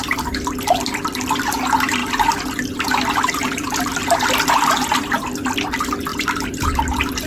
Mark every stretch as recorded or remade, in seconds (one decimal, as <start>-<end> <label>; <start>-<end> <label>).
0.0-6.1 recorded; 6.1-6.8 remade; 6.8-7.3 recorded